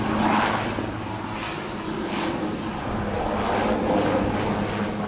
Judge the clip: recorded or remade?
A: recorded